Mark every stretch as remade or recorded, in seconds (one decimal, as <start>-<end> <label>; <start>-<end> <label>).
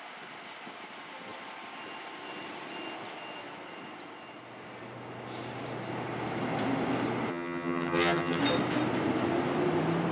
0.0-7.3 recorded; 7.3-8.4 remade; 8.4-10.1 recorded